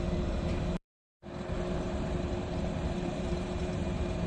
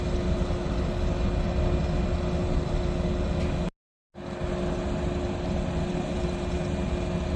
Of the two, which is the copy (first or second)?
first